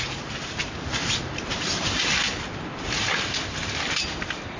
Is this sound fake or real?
fake